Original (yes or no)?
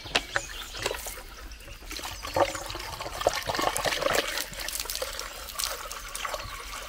yes